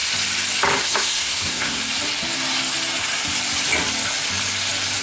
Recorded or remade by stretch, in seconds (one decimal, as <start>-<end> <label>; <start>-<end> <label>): 0.0-0.8 recorded; 0.8-1.8 remade; 1.8-5.0 recorded